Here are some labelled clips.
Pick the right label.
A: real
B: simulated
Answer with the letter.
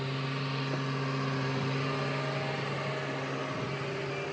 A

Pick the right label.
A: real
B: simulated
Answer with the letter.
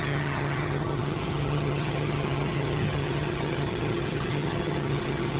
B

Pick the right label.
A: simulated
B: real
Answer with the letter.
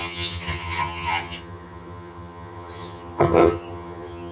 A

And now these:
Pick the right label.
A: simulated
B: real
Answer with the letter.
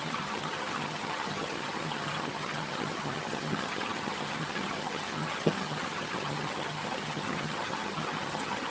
A